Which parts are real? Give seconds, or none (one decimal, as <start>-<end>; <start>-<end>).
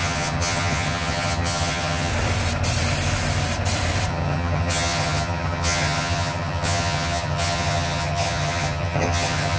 2.1-4.1